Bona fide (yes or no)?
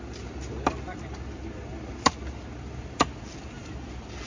yes